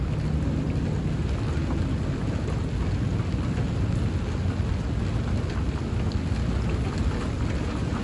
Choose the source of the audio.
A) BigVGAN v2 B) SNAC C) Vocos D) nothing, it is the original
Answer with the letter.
D